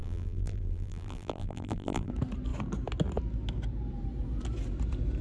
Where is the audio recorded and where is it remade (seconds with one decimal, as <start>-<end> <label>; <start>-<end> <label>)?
0.0-2.1 remade; 2.1-5.2 recorded

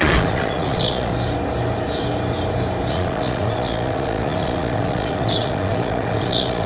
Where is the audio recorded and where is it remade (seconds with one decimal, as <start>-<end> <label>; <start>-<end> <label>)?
0.0-1.1 remade; 1.1-2.9 recorded; 2.9-6.7 remade

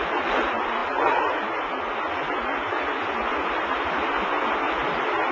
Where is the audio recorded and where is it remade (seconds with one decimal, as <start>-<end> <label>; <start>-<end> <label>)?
0.0-5.3 recorded

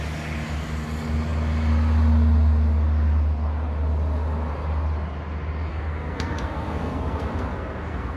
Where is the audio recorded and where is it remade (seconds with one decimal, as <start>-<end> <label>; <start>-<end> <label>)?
0.0-5.7 recorded; 5.7-8.2 remade

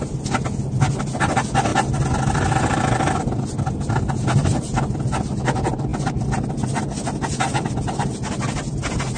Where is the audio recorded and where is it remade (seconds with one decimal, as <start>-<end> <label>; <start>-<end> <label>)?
0.0-9.2 recorded

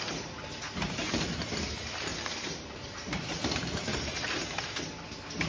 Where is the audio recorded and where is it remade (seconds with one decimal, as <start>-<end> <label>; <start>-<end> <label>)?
0.0-0.8 recorded; 0.8-1.4 remade; 1.4-2.1 recorded; 2.1-4.0 remade; 4.0-5.5 recorded

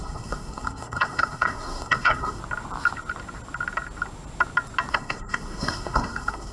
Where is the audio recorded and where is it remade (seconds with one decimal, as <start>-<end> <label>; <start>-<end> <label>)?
0.0-2.4 remade; 2.4-4.9 recorded; 4.9-6.5 remade